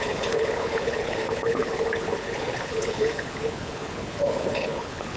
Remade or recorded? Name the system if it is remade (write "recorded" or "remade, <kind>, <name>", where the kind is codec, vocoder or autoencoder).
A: remade, codec, HILCodec